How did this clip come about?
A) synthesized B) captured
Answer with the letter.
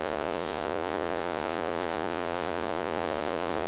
A